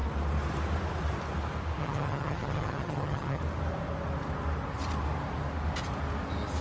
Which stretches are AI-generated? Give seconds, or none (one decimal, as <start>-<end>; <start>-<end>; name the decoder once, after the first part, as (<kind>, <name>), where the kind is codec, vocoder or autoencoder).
1.8-3.4 (vocoder, HiFi-GAN)